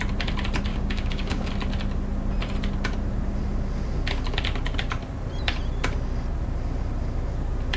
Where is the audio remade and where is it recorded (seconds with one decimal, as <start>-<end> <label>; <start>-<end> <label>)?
0.0-0.7 recorded; 0.7-1.5 remade; 1.5-7.8 recorded